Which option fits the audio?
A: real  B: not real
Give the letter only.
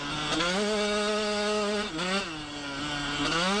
A